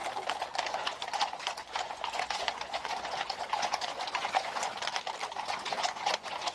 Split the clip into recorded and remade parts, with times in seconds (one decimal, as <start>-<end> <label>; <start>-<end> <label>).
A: 0.0-0.7 recorded; 0.7-4.7 remade; 4.7-5.4 recorded; 5.4-6.5 remade